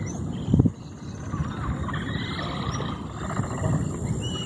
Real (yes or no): yes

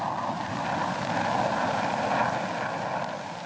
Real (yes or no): yes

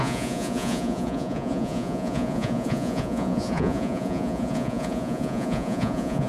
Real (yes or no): no